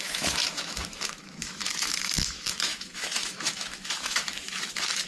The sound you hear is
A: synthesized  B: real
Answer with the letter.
A